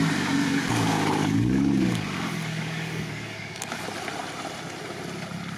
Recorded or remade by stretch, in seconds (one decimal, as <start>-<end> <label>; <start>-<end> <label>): 0.0-0.4 recorded; 0.4-3.8 remade; 3.8-5.6 recorded